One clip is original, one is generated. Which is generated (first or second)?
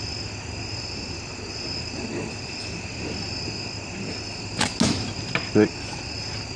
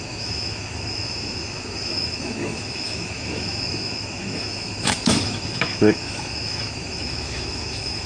second